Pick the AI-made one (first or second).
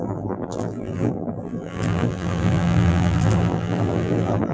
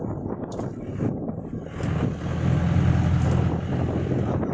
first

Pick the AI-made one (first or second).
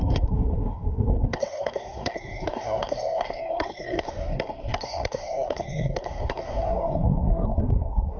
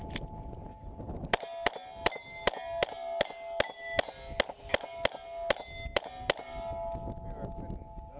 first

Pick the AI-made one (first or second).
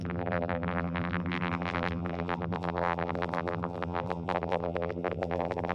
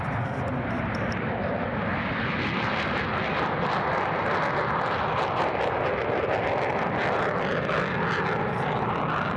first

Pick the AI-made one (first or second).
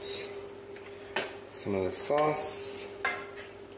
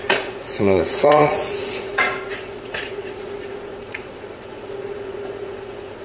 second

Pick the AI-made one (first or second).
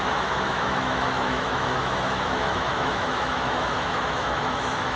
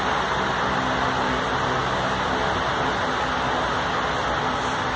first